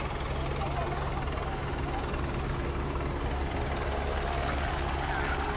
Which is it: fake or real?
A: real